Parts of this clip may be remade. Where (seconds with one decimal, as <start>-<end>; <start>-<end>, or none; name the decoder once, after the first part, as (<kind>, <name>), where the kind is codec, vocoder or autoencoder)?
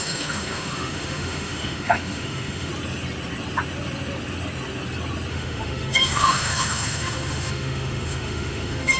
0.0-2.7 (autoencoder, DAC-VAE); 5.3-9.0